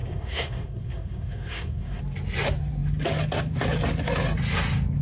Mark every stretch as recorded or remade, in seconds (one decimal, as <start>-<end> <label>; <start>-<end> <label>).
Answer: 0.0-2.0 remade; 2.0-5.0 recorded